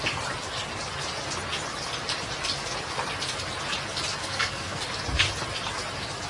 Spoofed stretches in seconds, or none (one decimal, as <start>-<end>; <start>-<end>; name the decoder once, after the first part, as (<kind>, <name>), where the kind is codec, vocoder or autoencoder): 4.2-4.8 (codec, SNAC)